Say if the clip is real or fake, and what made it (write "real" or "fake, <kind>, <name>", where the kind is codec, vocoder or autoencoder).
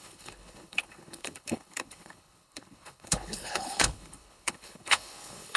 fake, codec, HILCodec